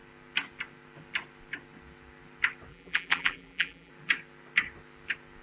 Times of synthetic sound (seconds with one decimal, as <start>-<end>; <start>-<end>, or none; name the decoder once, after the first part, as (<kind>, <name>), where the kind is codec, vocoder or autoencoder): 2.7-3.9 (vocoder, BigVGAN v2)